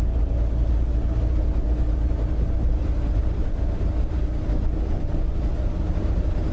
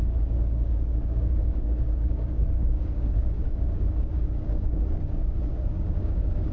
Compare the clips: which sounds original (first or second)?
first